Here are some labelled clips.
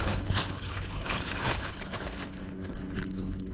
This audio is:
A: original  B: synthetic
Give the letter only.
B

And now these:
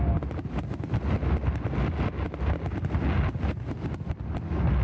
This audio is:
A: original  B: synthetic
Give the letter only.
A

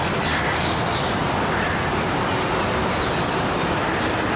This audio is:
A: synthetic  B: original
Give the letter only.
B